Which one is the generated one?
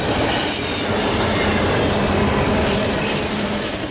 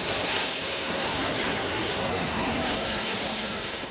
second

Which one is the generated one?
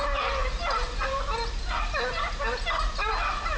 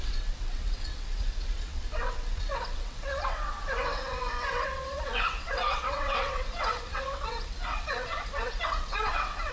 second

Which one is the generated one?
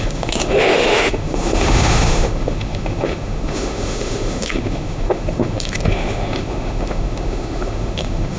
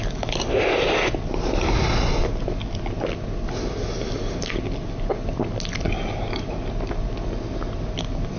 first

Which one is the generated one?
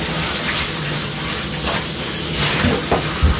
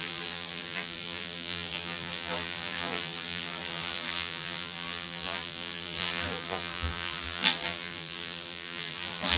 second